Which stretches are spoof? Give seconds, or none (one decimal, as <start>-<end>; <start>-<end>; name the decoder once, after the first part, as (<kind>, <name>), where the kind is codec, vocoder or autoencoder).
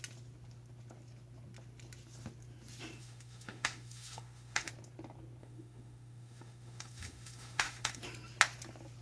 3.0-4.7 (autoencoder, DAC-VAE); 5.4-8.0